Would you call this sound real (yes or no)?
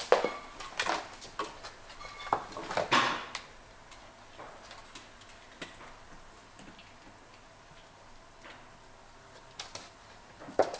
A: yes